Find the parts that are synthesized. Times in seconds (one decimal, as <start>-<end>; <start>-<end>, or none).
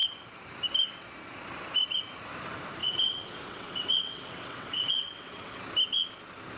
2.8-5.6